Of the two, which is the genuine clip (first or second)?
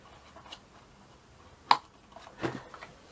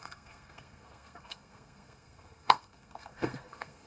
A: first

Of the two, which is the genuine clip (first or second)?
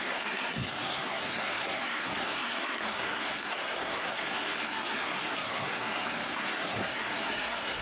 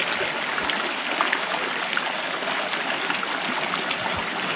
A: second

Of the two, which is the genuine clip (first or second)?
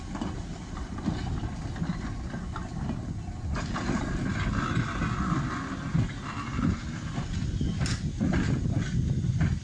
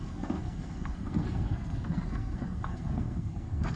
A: first